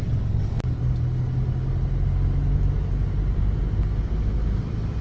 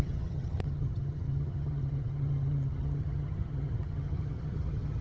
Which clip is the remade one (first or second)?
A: second